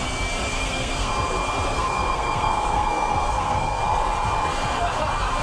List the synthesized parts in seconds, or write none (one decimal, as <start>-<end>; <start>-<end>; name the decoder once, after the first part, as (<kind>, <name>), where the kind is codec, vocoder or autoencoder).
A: 0.5-1.1 (codec, SNAC); 1.7-3.8